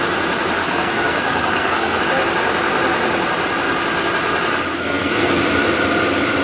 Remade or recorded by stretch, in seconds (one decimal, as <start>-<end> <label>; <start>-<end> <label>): 0.0-0.6 recorded; 0.6-2.0 remade; 2.0-4.7 recorded; 4.7-5.4 remade; 5.4-6.4 recorded